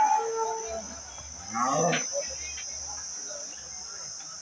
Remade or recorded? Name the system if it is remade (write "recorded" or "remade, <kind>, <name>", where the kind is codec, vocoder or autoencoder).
recorded